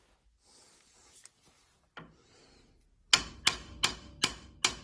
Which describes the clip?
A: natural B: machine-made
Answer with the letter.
A